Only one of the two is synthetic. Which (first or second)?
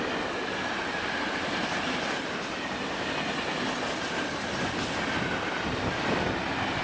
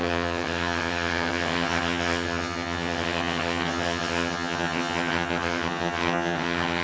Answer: second